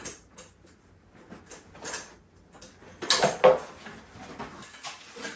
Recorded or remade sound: recorded